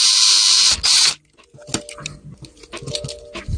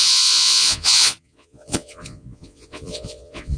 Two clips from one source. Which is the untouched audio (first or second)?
first